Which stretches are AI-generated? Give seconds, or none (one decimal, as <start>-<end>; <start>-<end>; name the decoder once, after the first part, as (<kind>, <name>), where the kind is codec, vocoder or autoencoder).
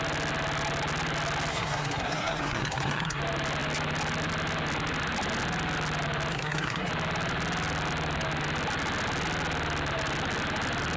1.5-3.2 (codec, SNAC); 6.3-6.9